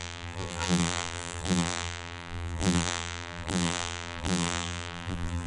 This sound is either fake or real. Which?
fake